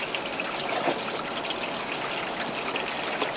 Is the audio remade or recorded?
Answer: recorded